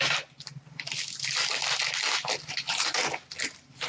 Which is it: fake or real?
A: real